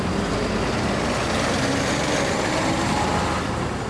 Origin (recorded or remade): recorded